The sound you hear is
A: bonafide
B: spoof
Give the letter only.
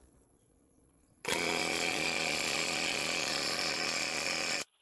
B